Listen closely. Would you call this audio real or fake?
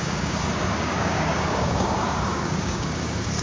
fake